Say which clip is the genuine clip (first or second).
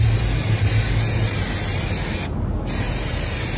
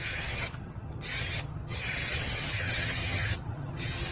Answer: first